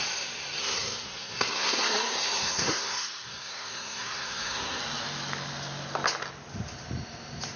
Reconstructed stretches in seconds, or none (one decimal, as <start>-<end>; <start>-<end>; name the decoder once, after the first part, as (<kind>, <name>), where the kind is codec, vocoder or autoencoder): 0.6-4.8 (codec, SNAC)